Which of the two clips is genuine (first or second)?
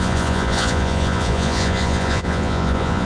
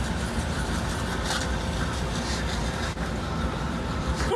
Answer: second